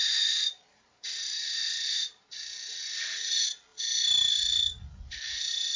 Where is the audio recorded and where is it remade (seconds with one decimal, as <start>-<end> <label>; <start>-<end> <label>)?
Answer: 0.0-3.0 remade; 3.0-5.8 recorded